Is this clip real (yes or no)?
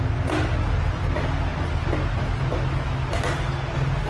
yes